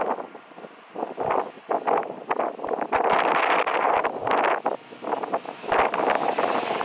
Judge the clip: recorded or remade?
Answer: recorded